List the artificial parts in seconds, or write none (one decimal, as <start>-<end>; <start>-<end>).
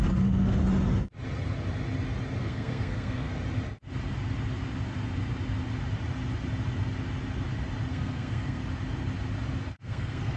0.0-0.6; 2.4-3.3; 7.9-8.6; 9.7-10.4